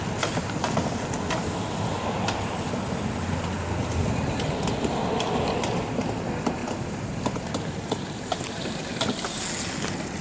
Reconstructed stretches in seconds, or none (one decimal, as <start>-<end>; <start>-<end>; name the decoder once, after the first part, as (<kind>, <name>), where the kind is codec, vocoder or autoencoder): 6.6-8.6 (vocoder, BigVGAN v2)